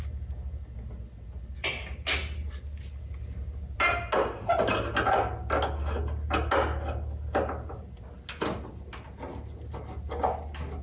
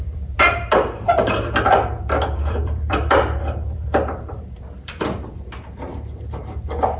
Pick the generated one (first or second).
second